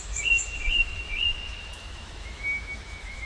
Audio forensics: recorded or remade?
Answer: remade